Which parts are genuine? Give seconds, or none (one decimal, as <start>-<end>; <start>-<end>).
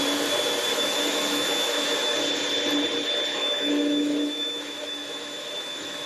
0.0-0.7; 2.2-3.3